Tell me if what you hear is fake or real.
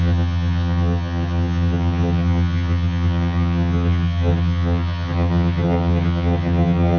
fake